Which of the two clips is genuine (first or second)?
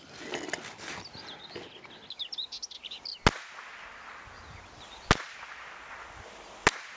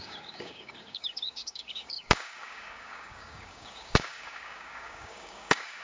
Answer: first